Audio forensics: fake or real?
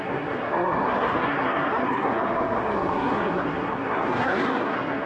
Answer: fake